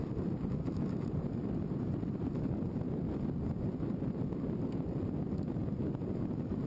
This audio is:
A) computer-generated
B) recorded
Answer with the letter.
B